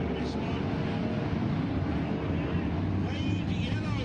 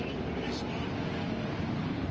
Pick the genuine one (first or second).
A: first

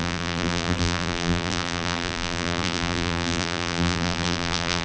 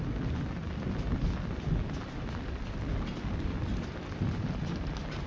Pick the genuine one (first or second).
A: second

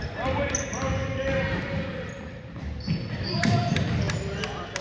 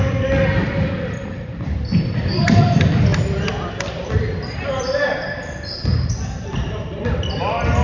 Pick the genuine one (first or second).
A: first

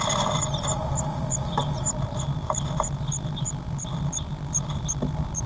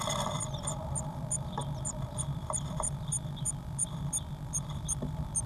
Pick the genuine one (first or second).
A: first